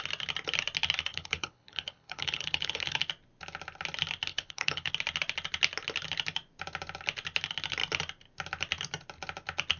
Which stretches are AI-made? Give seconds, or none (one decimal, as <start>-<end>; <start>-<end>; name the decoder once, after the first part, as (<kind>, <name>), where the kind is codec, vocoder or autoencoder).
1.1-3.0 (codec, HILCodec); 4.3-4.9